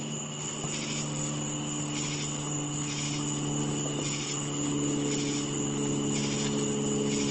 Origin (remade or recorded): recorded